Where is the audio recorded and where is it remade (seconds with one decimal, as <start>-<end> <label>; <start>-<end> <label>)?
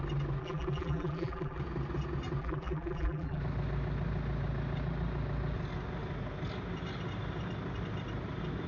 0.0-0.4 recorded; 0.4-1.6 remade; 1.6-2.4 recorded; 2.4-3.4 remade; 3.4-8.7 recorded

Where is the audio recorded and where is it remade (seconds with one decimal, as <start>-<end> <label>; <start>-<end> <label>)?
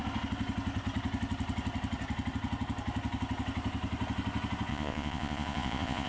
0.0-4.7 recorded; 4.7-6.1 remade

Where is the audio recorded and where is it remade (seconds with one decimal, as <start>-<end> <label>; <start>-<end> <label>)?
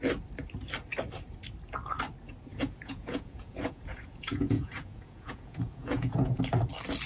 0.0-2.5 recorded; 2.5-6.4 remade; 6.4-7.1 recorded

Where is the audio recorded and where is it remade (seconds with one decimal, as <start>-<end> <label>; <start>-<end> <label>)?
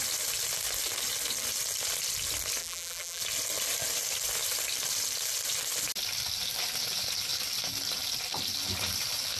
0.0-2.6 recorded; 2.6-3.2 remade; 3.2-9.4 recorded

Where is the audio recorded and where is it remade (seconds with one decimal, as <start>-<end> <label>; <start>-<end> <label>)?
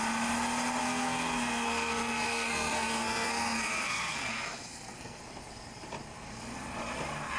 0.0-0.8 recorded; 0.8-5.2 remade; 5.2-7.4 recorded